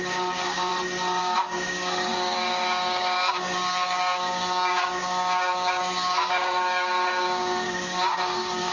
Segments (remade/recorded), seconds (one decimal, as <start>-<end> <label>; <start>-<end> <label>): 0.0-0.7 remade; 0.7-1.2 recorded; 1.2-8.7 remade